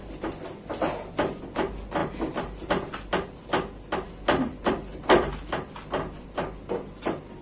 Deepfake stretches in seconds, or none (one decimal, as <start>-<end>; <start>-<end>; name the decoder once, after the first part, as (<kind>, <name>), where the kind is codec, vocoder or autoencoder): none